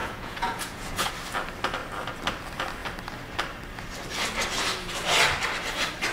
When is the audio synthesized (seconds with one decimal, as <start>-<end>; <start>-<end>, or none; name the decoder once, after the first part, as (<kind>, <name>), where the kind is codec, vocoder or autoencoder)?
0.0-1.1 (vocoder, Vocos)